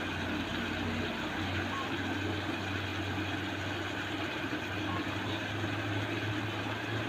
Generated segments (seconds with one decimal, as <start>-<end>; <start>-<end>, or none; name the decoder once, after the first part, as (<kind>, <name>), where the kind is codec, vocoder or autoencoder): none

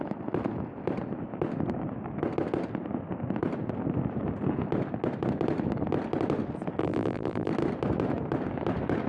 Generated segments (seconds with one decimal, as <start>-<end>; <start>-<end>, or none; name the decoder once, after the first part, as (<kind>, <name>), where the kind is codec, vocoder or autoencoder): 6.8-7.5 (vocoder, BigVGAN v2)

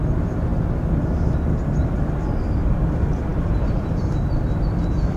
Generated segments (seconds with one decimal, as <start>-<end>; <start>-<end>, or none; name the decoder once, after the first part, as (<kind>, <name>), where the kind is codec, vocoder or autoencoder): 0.0-0.5 (vocoder, BigVGAN v2); 1.6-5.2